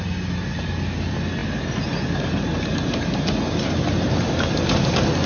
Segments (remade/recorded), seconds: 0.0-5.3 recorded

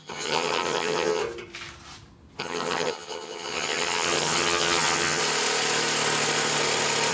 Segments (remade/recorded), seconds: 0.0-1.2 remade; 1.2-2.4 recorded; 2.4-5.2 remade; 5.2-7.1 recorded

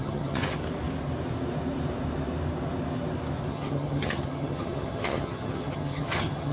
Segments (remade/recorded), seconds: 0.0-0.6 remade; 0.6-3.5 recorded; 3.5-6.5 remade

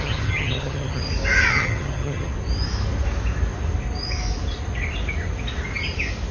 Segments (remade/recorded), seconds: 0.0-1.0 remade; 1.0-1.5 recorded; 1.5-2.3 remade; 2.3-6.3 recorded